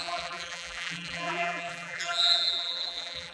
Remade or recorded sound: remade